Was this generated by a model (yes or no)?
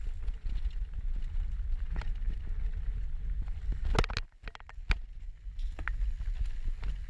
no